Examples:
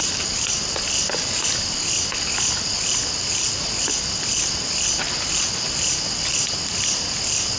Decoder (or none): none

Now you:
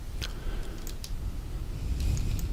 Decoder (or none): none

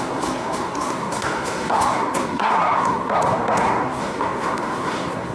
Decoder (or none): codec, SNAC